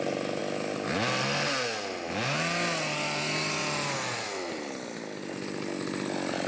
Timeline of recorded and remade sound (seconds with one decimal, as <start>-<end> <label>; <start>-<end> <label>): 0.0-6.5 recorded